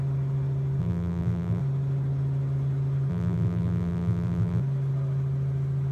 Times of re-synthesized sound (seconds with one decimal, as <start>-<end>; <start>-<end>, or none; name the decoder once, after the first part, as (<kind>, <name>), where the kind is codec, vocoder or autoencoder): 0.8-1.6 (vocoder, BigVGAN v2); 3.1-4.6